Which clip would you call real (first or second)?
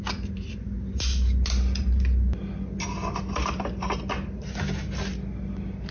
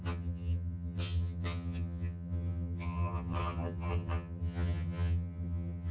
first